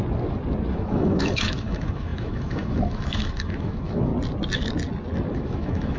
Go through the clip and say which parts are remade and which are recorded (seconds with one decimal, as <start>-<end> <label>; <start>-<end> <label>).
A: 0.0-0.7 recorded; 0.7-4.1 remade; 4.1-5.3 recorded; 5.3-6.0 remade